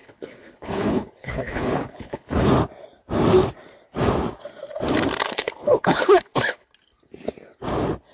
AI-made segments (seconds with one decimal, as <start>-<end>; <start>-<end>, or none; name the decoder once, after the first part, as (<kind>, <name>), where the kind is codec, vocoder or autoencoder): 0.0-2.5 (codec, HILCodec); 5.3-6.7